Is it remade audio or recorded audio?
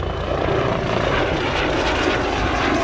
recorded